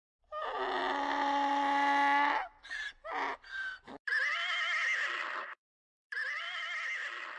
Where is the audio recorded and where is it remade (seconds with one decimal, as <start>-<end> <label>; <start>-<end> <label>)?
0.0-5.9 recorded; 5.9-6.6 remade; 6.6-7.4 recorded